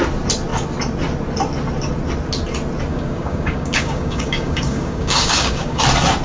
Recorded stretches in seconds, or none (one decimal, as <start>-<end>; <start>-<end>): 0.0-2.9; 5.8-6.2